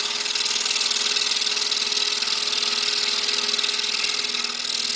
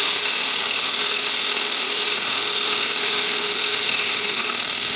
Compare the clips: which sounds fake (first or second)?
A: second